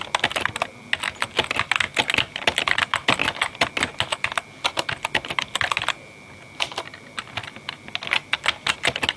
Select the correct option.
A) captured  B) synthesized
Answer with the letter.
A